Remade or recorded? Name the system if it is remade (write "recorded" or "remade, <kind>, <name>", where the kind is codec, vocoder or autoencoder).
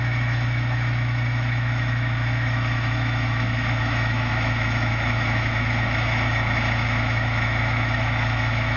remade, autoencoder, DAC-VAE